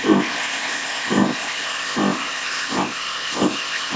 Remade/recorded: remade